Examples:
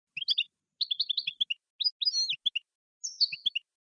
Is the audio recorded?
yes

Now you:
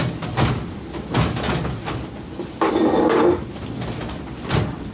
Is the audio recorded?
yes